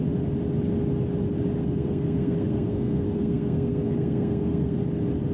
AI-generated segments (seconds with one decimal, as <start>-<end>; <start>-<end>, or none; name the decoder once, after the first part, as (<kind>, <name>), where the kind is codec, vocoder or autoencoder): 1.6-4.8 (codec, SNAC)